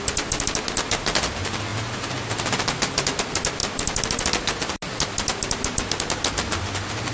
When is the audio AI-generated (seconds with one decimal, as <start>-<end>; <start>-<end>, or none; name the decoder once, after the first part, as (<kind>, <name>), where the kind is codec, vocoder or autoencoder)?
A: none